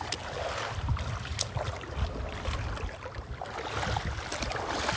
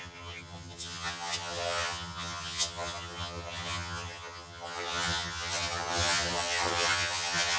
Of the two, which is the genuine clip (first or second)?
first